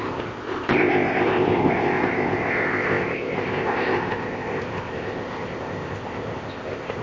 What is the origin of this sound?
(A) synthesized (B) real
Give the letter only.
A